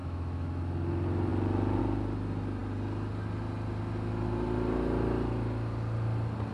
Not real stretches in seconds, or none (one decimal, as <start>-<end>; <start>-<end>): 0.0-0.6